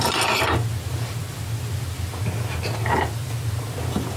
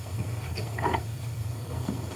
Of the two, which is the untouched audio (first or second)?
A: first